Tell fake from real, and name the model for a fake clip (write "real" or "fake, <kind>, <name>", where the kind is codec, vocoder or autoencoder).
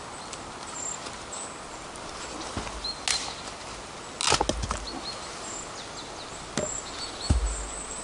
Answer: real